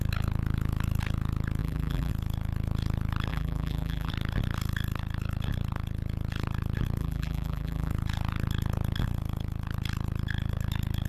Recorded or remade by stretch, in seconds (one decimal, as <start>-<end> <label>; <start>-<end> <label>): 0.0-1.6 recorded; 1.6-2.1 remade; 2.1-3.3 recorded; 3.3-4.1 remade; 4.1-7.0 recorded; 7.0-7.9 remade; 7.9-11.1 recorded